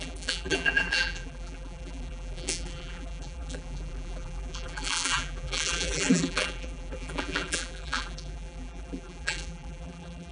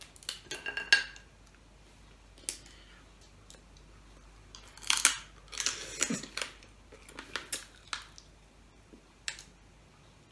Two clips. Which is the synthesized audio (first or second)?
first